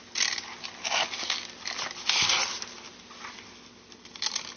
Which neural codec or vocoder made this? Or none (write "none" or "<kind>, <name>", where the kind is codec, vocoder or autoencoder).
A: none